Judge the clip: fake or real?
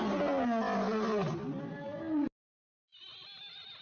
real